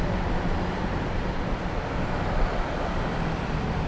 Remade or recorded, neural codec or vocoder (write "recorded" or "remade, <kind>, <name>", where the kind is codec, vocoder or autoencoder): recorded